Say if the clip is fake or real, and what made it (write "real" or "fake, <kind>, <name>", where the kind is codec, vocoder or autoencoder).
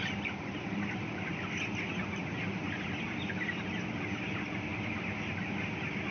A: real